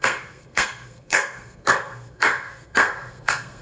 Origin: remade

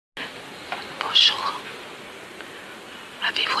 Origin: recorded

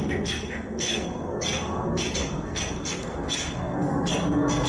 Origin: remade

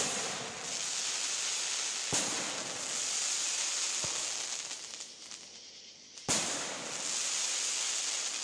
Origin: recorded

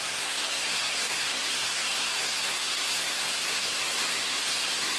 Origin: remade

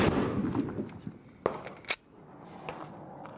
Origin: recorded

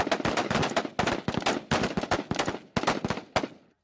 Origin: recorded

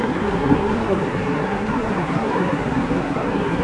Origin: remade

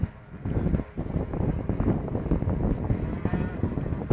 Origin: recorded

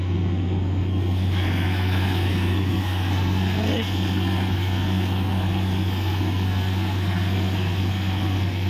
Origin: remade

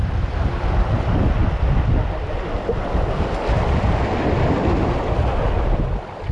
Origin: recorded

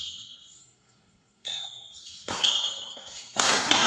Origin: remade